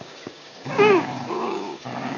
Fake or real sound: fake